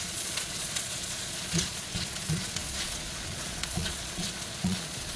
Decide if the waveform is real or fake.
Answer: fake